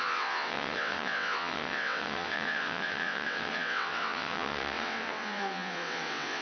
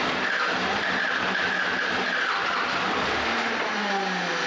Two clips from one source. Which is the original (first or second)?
second